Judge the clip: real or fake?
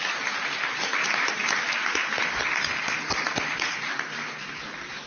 real